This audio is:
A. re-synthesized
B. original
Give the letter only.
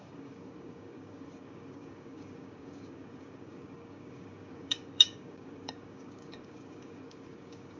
A